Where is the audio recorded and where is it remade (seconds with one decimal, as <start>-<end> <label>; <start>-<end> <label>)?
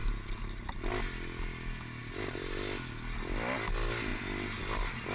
0.0-5.1 recorded